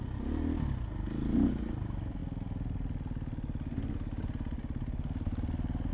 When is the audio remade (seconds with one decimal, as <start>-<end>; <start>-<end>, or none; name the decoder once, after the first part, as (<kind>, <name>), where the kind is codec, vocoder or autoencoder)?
none